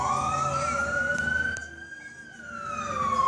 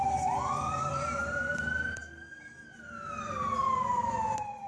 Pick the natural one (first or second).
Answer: first